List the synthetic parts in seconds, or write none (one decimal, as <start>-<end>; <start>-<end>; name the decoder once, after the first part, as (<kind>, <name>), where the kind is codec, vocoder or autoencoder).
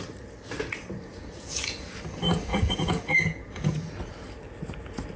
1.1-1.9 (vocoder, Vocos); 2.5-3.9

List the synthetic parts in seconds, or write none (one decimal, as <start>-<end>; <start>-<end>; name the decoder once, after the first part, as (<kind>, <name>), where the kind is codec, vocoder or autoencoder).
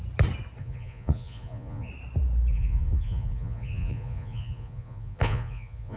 0.6-1.9 (vocoder, Vocos); 2.5-6.0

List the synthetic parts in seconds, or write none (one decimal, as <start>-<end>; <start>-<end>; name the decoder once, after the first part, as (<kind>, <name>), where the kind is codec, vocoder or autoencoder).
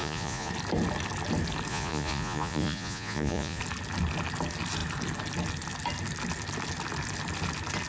0.0-0.5 (vocoder, Vocos); 1.7-3.6